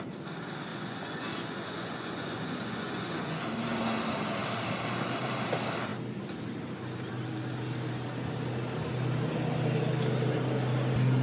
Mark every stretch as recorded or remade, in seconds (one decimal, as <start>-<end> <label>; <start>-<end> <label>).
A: 0.0-0.7 recorded; 0.7-3.4 remade; 3.4-11.2 recorded